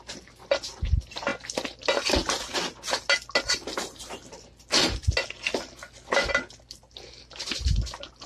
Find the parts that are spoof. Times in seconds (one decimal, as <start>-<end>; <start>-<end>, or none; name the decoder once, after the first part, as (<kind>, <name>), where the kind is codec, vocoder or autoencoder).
none